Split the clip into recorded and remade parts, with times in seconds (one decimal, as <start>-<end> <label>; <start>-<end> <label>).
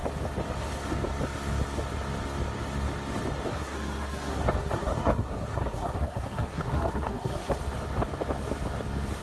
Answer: 0.0-3.5 recorded; 3.5-7.6 remade; 7.6-9.2 recorded